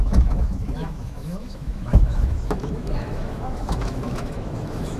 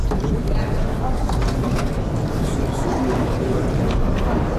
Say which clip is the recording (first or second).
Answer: second